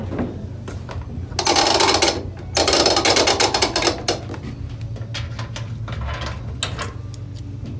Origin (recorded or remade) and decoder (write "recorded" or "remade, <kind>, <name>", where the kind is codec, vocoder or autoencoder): recorded